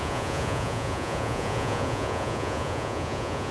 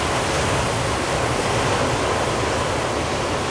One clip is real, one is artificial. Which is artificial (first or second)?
first